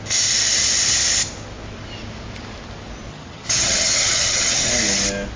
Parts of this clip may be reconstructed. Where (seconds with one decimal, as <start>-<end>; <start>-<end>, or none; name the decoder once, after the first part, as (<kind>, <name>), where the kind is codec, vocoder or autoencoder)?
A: 3.1-4.7 (vocoder, HiFi-GAN)